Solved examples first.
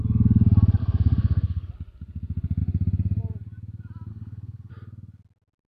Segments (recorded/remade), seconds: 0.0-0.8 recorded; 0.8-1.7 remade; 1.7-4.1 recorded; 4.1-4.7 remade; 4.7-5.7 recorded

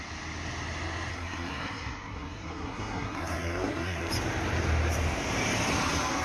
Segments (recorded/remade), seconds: 0.0-1.1 recorded; 1.1-4.1 remade; 4.1-6.2 recorded

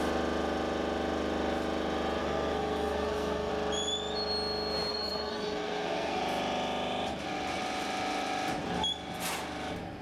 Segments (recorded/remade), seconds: 0.0-2.2 recorded; 2.2-3.5 remade; 3.5-4.9 recorded; 4.9-6.2 remade; 6.2-10.0 recorded

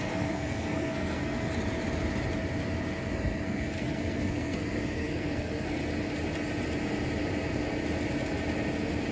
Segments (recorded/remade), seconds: 0.0-1.5 remade; 1.5-3.2 recorded; 3.2-5.8 remade; 5.8-9.1 recorded

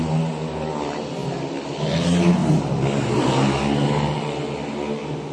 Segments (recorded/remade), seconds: 0.0-5.3 recorded

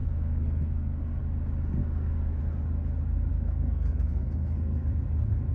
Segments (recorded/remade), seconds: 0.0-1.2 remade; 1.2-1.8 recorded; 1.8-2.4 remade; 2.4-3.3 recorded; 3.3-4.9 remade; 4.9-5.5 recorded

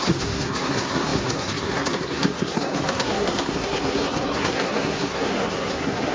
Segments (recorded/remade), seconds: 0.0-6.1 remade

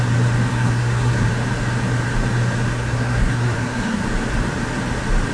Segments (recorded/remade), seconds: 0.0-0.5 recorded; 0.5-1.3 remade; 1.3-2.7 recorded; 2.7-4.0 remade; 4.0-5.3 recorded